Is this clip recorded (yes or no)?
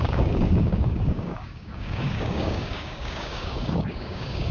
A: no